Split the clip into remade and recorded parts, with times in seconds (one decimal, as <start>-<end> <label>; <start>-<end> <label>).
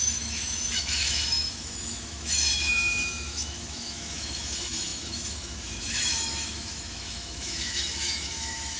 0.0-8.8 remade